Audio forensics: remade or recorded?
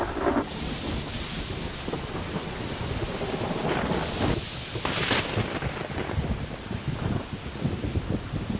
recorded